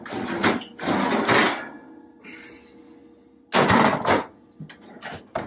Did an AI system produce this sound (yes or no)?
no